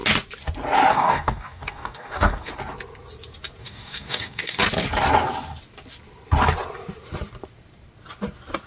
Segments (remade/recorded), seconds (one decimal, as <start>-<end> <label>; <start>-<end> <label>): 0.0-0.9 recorded; 0.9-2.5 remade; 2.5-3.6 recorded; 3.6-4.6 remade; 4.6-8.7 recorded